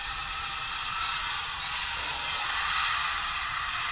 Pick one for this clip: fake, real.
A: fake